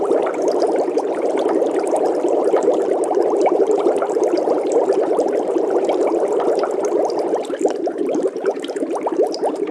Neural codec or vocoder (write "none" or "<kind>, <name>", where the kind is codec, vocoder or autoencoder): vocoder, BigVGAN v2